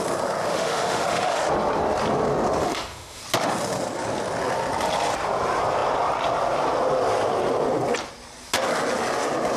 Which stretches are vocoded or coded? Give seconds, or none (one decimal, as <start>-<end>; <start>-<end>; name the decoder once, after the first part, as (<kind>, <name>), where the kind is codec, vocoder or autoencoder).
0.5-1.4 (autoencoder, DAC-VAE); 2.6-3.2